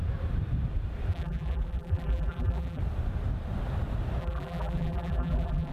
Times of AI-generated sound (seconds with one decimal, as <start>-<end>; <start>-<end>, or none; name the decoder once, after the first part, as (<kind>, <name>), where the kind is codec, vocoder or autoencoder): 1.1-2.8 (vocoder, BigVGAN v2); 4.2-5.7